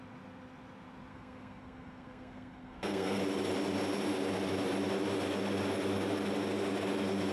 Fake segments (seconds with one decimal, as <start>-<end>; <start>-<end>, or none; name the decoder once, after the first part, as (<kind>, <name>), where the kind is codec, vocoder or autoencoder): 1.1-3.2 (codec, SNAC)